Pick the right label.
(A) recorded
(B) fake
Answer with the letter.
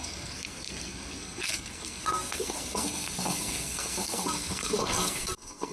B